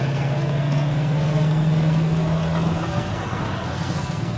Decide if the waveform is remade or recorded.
remade